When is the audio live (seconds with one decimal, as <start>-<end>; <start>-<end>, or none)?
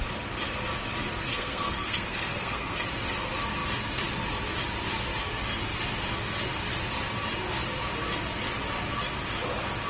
0.0-1.3; 2.8-9.9